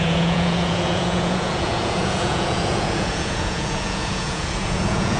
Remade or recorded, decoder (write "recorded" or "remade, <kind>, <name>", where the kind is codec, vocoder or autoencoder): remade, vocoder, Vocos